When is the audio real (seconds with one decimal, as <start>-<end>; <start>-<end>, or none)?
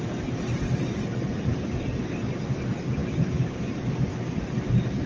0.0-1.5; 2.3-5.1